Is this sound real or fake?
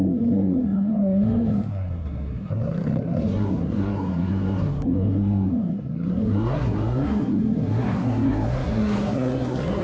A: fake